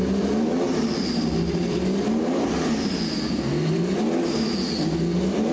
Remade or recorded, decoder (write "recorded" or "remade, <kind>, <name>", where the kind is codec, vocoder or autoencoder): recorded